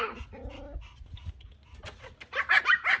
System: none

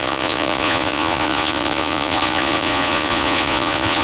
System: vocoder, Vocos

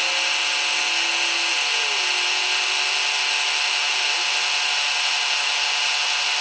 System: none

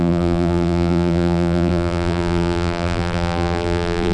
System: vocoder, BigVGAN v2